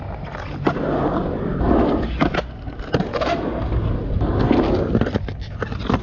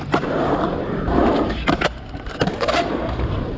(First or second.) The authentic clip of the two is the first